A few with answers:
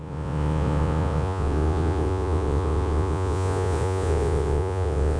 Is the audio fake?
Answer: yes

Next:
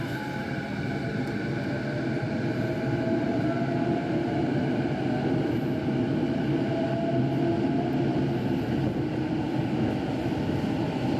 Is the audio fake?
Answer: no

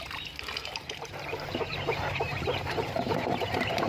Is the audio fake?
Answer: yes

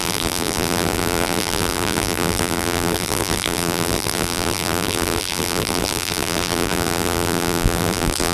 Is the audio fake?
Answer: yes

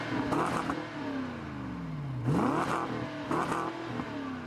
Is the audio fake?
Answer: no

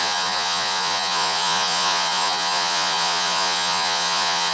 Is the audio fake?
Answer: yes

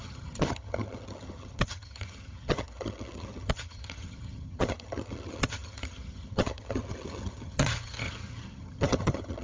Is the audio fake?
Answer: yes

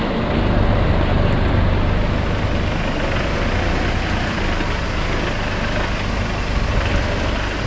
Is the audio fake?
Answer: no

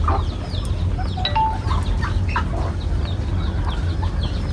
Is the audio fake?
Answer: no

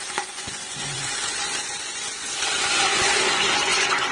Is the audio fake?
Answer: yes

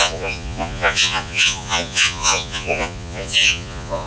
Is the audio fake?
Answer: yes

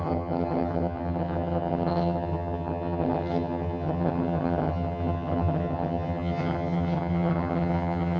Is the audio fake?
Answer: yes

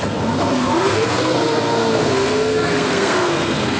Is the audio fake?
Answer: yes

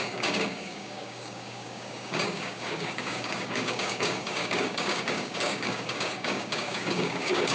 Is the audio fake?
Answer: yes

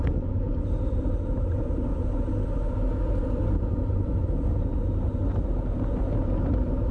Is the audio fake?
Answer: no